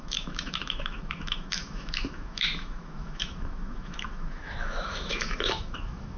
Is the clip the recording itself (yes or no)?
no